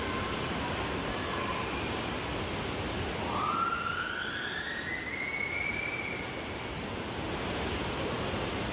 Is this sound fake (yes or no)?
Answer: no